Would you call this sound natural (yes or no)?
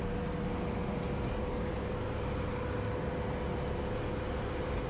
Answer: yes